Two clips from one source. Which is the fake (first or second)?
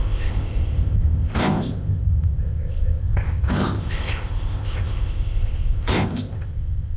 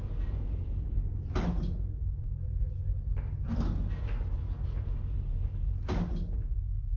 first